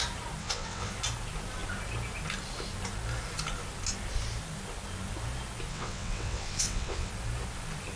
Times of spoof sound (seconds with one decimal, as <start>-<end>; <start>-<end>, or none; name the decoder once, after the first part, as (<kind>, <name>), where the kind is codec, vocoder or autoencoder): 0.4-0.9 (vocoder, WaveNeXt); 5.7-7.1